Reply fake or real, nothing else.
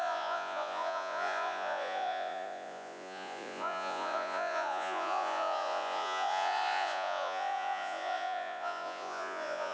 fake